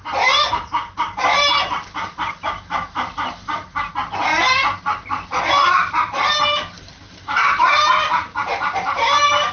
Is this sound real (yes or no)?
no